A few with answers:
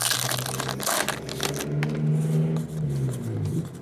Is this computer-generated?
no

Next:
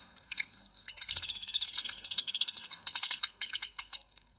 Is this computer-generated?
yes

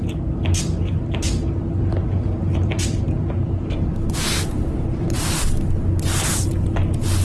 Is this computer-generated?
no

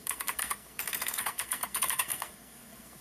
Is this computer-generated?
yes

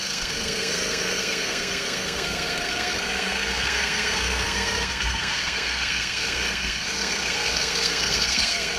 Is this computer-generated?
yes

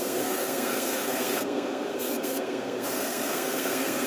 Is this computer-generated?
yes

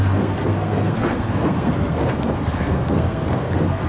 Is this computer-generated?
yes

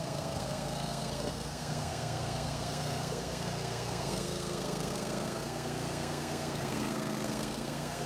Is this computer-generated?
yes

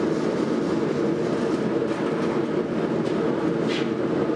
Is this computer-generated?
no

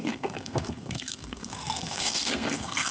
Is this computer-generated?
yes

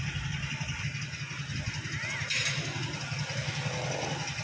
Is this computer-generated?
no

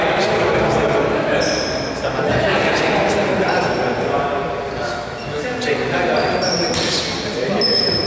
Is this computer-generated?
no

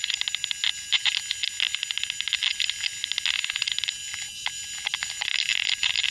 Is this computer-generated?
no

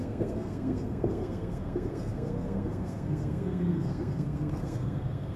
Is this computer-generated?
yes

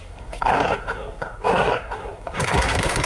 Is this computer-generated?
yes